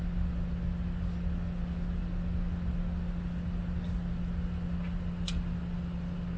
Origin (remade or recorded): recorded